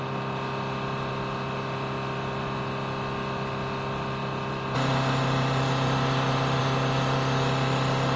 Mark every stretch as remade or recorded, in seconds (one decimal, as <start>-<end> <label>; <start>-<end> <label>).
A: 0.0-8.2 recorded